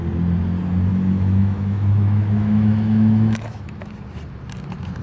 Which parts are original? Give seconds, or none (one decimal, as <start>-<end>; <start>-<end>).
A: 0.0-0.9; 3.9-5.0

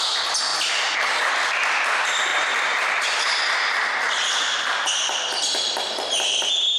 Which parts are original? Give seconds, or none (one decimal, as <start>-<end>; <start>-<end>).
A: 0.0-0.5; 1.3-2.3; 4.6-6.8

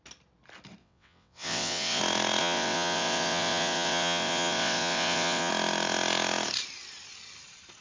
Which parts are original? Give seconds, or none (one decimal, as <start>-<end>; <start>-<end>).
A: 0.0-0.8; 2.0-2.4; 5.5-7.8

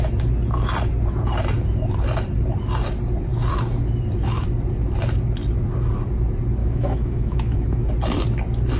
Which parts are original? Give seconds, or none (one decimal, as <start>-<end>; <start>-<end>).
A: 0.0-6.6; 7.9-8.8

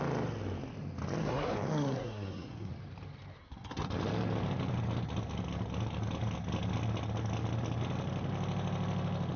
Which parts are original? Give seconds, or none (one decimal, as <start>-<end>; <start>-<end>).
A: 0.0-1.2; 2.7-3.4; 3.9-9.4

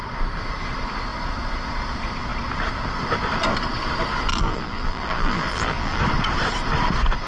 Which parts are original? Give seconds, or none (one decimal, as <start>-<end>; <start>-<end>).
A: 0.0-4.3; 6.0-7.3

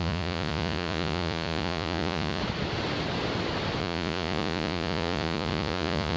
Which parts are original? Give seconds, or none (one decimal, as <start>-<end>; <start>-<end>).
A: 2.4-3.8

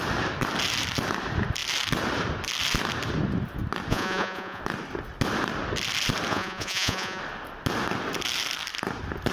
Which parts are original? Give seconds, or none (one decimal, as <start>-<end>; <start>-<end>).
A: 0.0-3.9; 4.6-6.3; 7.2-9.3